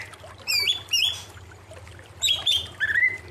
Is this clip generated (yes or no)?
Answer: yes